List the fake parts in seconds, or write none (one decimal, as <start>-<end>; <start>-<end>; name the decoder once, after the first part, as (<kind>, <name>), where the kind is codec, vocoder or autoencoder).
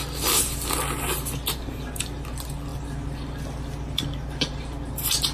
none